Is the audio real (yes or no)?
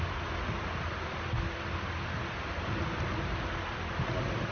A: yes